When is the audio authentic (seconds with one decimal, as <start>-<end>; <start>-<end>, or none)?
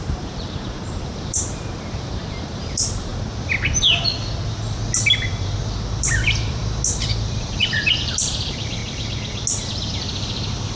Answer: 3.1-6.0; 6.6-7.2; 8.8-9.7